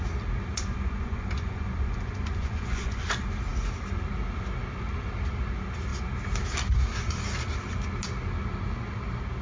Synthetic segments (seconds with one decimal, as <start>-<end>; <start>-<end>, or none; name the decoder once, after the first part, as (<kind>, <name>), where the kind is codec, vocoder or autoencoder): 0.5-3.1 (vocoder, Vocos)